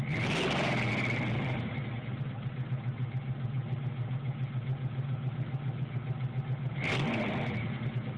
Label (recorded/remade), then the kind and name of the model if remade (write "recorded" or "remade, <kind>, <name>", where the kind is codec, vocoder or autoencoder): recorded